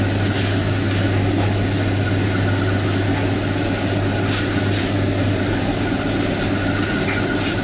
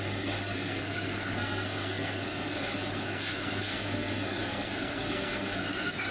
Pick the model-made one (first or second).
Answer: second